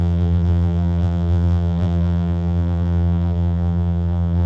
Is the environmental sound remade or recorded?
remade